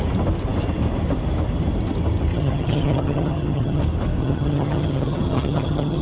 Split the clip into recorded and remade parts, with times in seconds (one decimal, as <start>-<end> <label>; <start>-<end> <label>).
0.0-2.3 recorded; 2.3-3.8 remade; 3.8-4.2 recorded; 4.2-6.0 remade